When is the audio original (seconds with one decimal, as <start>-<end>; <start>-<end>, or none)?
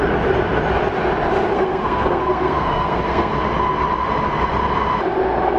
0.0-1.5; 3.3-5.6